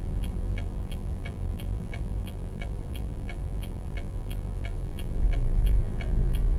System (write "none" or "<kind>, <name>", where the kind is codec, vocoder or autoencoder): vocoder, BigVGAN v2